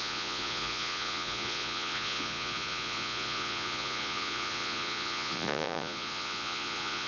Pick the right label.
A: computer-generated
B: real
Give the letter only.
A